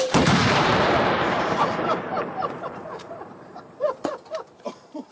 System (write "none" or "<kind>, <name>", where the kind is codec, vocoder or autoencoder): vocoder, BigVGAN v2